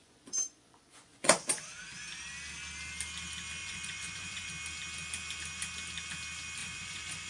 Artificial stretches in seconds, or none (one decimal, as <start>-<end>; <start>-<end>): 0.0-1.5; 3.6-4.5; 6.6-7.3